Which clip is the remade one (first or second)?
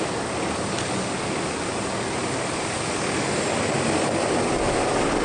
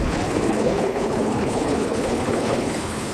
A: second